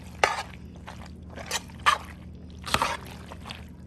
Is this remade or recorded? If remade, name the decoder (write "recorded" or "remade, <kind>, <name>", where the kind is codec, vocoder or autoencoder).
recorded